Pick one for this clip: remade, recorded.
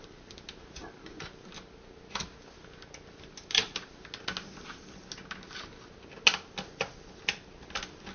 recorded